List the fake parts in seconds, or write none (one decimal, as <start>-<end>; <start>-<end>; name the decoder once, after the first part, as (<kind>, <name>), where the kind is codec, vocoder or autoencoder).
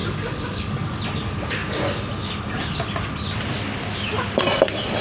0.0-1.0 (codec, DAC)